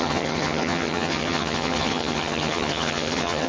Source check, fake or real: fake